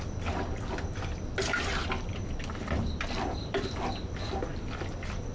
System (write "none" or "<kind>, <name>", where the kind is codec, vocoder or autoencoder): none